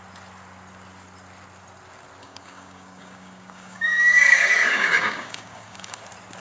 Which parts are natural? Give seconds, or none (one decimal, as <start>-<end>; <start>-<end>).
0.0-2.2; 6.0-6.4